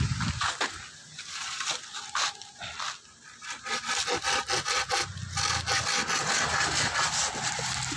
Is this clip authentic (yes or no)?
yes